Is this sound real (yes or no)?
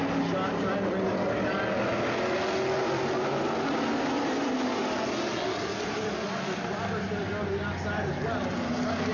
yes